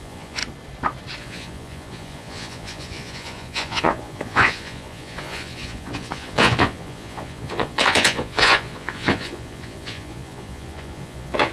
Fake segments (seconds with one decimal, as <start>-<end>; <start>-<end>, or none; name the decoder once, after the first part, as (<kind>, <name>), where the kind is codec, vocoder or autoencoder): 0.0-0.4 (vocoder, Vocos); 1.2-11.5

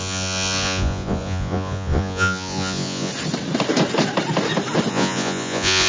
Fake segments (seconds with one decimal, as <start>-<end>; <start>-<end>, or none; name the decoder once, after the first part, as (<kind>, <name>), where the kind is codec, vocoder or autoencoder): 0.0-3.1 (vocoder, Vocos); 4.9-5.9

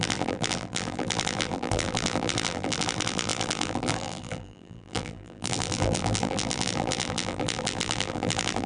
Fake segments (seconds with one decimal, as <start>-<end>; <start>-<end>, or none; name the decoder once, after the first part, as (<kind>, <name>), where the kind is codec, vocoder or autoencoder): 0.0-8.7 (vocoder, BigVGAN v2)

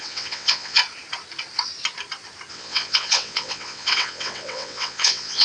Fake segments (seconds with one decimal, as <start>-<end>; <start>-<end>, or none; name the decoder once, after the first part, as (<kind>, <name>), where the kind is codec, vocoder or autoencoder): 0.0-0.8 (vocoder, WaveNeXt); 2.5-5.4

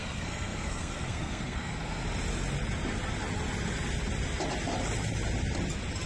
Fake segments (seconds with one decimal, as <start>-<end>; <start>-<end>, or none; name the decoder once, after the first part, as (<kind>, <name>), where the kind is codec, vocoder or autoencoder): 0.0-2.0 (codec, SNAC)